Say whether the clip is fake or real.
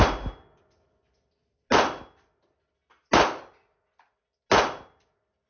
real